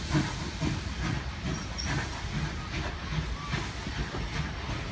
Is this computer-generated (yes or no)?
no